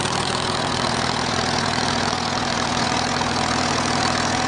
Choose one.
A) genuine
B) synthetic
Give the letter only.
B